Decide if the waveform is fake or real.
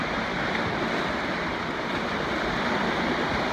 real